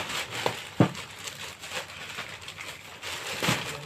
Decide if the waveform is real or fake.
real